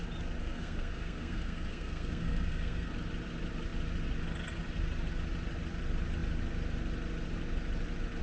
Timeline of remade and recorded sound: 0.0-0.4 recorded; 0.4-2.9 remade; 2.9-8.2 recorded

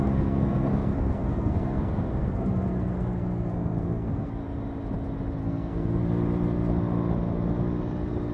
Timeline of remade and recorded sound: 0.0-4.4 remade; 4.4-5.4 recorded; 5.4-6.0 remade; 6.0-8.3 recorded